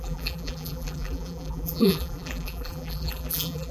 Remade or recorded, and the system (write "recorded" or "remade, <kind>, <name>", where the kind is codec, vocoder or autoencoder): remade, vocoder, BigVGAN v2